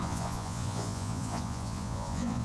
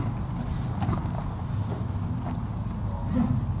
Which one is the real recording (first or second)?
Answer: second